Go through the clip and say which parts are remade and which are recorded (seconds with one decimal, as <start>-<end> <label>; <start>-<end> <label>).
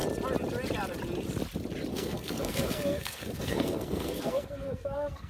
0.0-1.9 recorded; 1.9-5.3 remade